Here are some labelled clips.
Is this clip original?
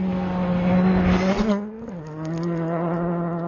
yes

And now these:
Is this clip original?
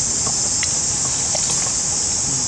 yes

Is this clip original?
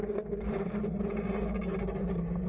yes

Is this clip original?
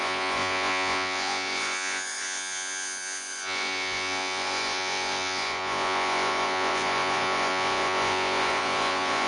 no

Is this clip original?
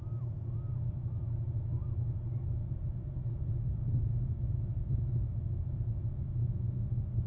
yes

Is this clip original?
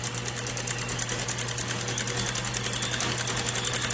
yes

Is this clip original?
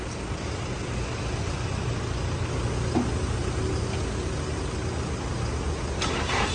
yes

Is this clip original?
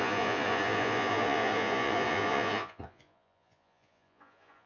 no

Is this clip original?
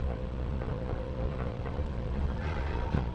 no